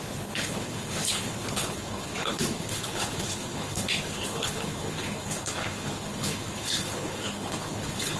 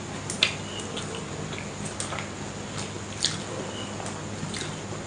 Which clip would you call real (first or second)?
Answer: second